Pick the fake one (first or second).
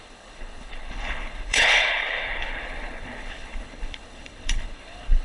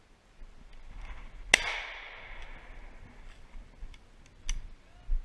first